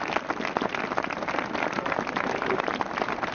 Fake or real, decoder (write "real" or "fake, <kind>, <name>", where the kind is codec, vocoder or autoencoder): real